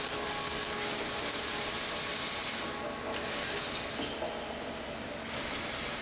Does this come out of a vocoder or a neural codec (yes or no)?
no